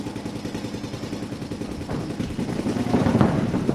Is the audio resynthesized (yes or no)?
no